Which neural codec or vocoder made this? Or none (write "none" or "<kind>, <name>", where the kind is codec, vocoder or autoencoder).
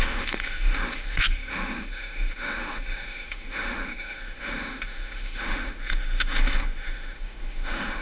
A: autoencoder, DAC-VAE